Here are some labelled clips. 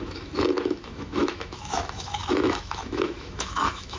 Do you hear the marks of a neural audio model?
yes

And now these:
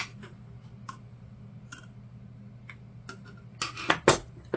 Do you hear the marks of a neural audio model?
no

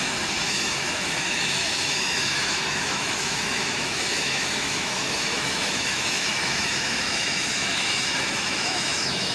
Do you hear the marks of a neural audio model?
yes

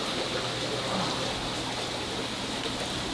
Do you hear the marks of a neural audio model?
no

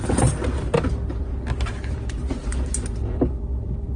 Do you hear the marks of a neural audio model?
no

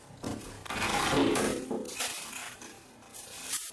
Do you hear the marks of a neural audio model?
no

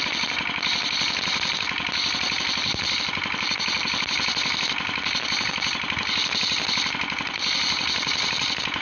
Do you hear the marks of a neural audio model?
no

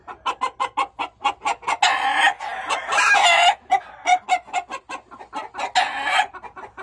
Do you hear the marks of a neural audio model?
no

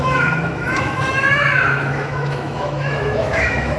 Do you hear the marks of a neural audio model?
yes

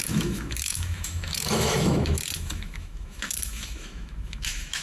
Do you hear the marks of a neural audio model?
yes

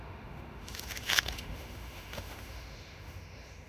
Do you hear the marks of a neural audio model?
yes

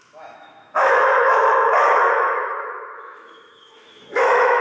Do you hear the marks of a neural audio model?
yes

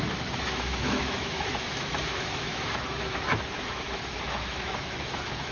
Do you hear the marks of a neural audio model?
yes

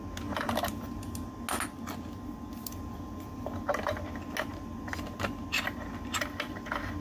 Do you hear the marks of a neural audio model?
no